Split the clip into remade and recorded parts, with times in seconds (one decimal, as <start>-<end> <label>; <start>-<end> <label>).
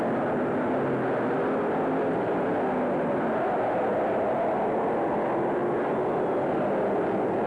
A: 0.0-7.5 recorded